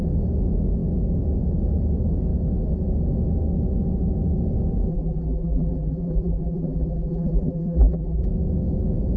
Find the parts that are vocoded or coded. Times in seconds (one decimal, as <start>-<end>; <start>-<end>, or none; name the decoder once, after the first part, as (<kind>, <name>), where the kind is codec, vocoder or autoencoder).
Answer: 4.9-8.2 (vocoder, BigVGAN v2)